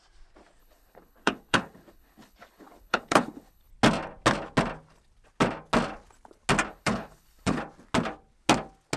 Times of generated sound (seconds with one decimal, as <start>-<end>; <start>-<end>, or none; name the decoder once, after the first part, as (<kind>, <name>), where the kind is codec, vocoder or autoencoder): 0.6-3.7 (codec, HILCodec); 6.7-7.6